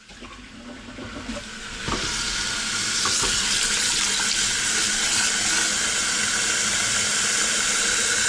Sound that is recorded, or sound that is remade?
recorded